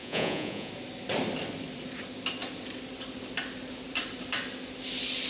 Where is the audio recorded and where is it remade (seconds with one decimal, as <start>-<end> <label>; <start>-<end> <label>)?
0.0-0.7 remade; 0.7-5.3 recorded